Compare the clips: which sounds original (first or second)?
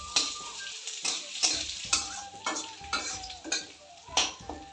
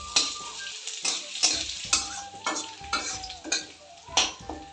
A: second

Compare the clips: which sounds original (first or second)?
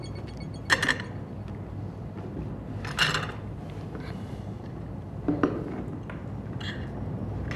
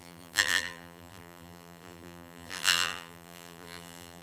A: first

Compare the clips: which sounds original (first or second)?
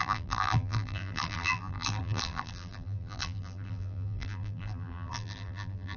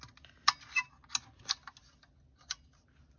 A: second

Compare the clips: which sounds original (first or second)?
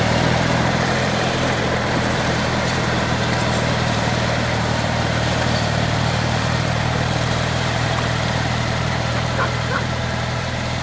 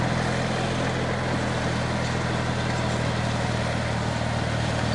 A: second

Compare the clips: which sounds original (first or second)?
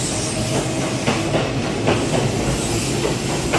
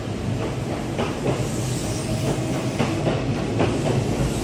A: first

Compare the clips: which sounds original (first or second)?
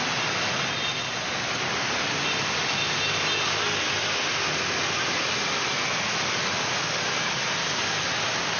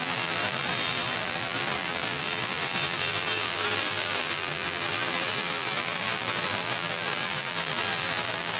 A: first